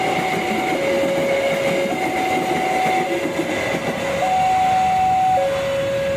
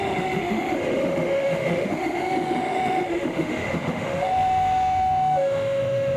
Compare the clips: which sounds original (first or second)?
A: first